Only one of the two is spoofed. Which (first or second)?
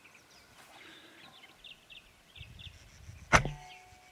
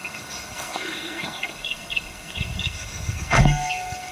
second